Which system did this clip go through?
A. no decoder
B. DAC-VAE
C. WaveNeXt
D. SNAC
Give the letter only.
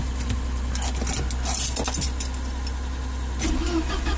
A